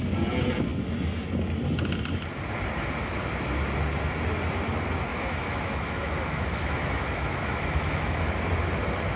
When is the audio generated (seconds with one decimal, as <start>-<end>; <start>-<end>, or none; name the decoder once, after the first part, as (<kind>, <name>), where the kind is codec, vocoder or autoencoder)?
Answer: 5.1-8.3 (autoencoder, DAC-VAE)